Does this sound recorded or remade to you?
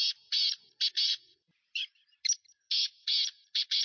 recorded